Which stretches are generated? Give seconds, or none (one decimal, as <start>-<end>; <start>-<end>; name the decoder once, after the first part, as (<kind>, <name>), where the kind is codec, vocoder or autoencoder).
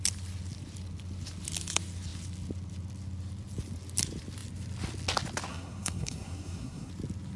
5.5-6.9 (codec, SNAC)